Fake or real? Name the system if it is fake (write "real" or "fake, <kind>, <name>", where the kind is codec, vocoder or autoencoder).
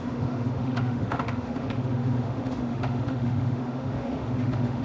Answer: fake, autoencoder, DAC-VAE